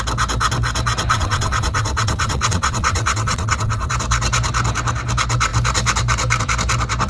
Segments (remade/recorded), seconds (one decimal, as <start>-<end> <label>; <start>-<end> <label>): 0.0-1.1 recorded; 1.1-3.9 remade; 3.9-7.1 recorded